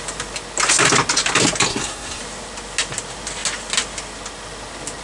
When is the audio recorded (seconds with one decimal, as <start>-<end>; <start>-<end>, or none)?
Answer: 0.0-1.7; 2.2-5.0